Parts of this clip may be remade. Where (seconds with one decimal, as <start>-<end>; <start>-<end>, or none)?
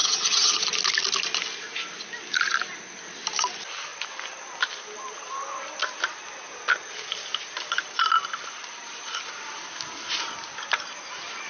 0.0-0.6